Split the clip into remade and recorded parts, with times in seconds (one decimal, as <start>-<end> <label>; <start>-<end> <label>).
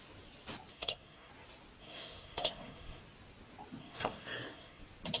0.0-0.7 recorded; 0.7-1.3 remade; 1.3-1.8 recorded; 1.8-3.0 remade; 3.0-3.8 recorded; 3.8-4.8 remade; 4.8-5.2 recorded